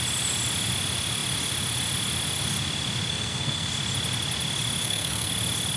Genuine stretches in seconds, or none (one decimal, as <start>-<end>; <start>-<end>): 0.0-3.1; 3.7-4.8; 5.3-5.8